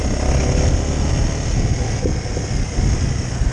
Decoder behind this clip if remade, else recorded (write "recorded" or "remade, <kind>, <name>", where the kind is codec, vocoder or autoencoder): recorded